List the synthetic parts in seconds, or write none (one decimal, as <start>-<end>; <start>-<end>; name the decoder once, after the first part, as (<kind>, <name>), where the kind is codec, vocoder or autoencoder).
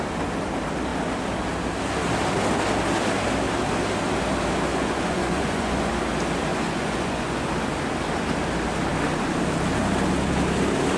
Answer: 4.7-5.9 (vocoder, Vocos); 6.5-7.5